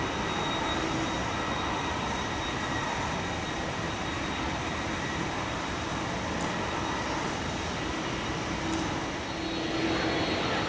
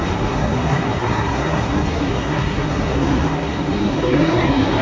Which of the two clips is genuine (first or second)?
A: first